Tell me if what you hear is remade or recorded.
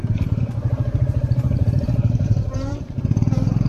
remade